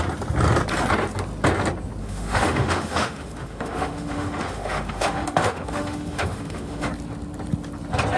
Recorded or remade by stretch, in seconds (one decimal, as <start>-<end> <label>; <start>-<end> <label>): 0.0-2.0 recorded; 2.0-6.9 remade; 6.9-8.2 recorded